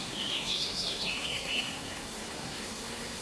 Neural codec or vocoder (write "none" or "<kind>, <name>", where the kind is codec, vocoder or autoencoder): codec, SNAC